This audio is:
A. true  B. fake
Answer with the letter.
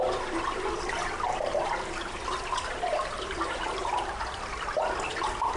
A